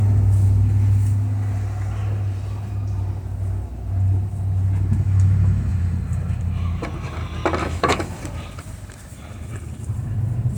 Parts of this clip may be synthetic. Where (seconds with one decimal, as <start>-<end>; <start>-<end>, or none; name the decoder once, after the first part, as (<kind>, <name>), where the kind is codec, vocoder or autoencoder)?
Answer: 7.6-8.2 (autoencoder, DAC-VAE)